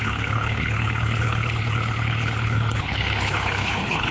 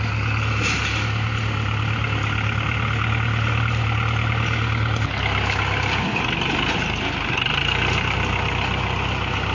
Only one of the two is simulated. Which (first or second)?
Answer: first